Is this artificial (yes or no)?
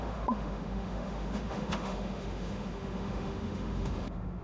yes